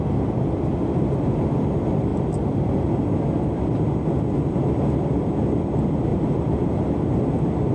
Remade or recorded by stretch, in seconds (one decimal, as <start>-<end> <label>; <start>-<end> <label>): 0.0-2.1 recorded; 2.1-2.9 remade; 2.9-6.1 recorded; 6.1-7.1 remade; 7.1-7.7 recorded